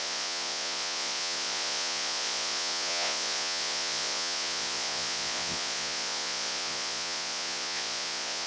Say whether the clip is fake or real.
fake